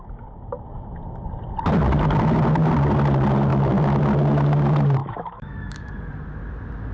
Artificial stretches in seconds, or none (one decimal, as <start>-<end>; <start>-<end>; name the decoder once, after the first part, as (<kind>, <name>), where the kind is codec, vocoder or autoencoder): 3.5-4.0 (autoencoder, DAC-VAE); 5.0-5.9